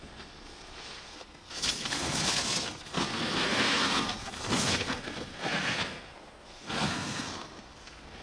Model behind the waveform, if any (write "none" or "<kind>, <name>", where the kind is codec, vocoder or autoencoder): codec, SNAC